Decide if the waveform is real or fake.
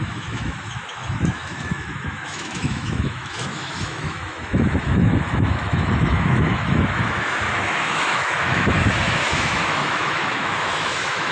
fake